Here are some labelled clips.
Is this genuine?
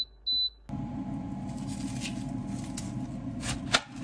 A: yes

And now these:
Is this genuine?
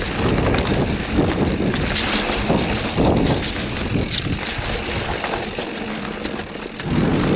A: yes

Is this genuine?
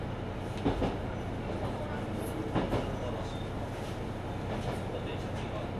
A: yes